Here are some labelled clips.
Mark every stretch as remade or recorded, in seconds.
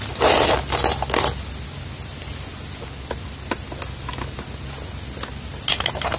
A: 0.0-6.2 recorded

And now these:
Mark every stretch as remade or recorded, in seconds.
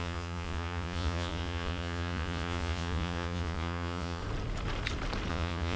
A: 0.0-4.2 remade; 4.2-5.3 recorded; 5.3-5.8 remade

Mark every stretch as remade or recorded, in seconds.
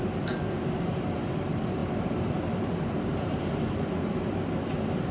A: 0.0-5.1 recorded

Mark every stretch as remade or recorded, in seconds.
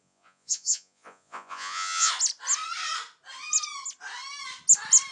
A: 0.0-2.1 remade; 2.1-5.1 recorded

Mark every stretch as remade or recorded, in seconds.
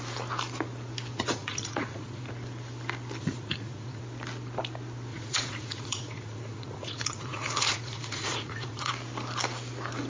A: 0.0-1.1 recorded; 1.1-2.3 remade; 2.3-3.2 recorded; 3.2-4.0 remade; 4.0-5.1 recorded; 5.1-8.9 remade; 8.9-10.1 recorded